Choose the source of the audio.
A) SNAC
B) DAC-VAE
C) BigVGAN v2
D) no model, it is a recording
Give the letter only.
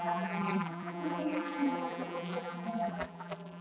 C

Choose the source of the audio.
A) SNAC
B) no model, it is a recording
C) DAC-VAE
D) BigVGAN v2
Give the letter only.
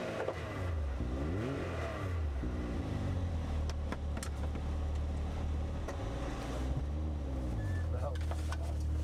B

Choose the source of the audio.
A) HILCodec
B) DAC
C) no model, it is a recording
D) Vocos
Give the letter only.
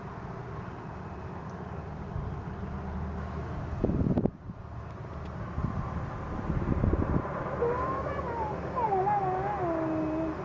C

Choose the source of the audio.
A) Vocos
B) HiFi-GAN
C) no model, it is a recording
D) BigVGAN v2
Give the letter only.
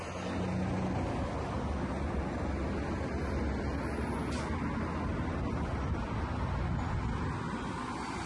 C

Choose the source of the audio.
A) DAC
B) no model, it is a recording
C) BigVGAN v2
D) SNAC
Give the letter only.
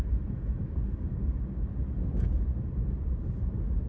B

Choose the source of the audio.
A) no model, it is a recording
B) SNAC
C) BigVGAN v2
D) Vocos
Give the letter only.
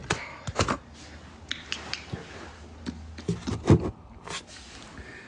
A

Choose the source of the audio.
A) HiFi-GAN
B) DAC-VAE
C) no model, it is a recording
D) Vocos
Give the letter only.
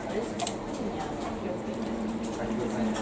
C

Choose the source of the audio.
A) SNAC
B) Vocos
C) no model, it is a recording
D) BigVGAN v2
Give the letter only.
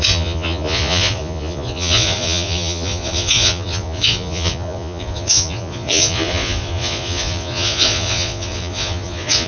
B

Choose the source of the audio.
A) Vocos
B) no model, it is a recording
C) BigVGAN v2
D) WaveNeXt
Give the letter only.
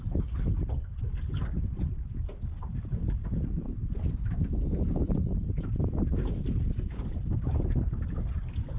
B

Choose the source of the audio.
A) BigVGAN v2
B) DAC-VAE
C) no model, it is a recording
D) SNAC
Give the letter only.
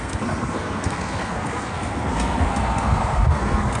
D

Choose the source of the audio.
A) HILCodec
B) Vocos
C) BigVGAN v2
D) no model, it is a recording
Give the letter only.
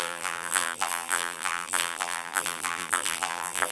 C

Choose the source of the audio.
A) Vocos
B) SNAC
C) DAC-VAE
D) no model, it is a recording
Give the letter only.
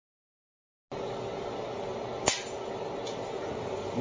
D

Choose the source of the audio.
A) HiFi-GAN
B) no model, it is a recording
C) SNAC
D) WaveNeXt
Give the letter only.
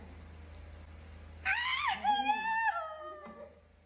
B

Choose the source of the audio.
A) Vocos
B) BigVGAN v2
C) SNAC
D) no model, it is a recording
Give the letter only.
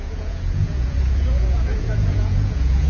A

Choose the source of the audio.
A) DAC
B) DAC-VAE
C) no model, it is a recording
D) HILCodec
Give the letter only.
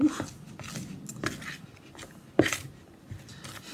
C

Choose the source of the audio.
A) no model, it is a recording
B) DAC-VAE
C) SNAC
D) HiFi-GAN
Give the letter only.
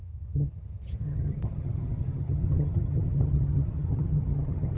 D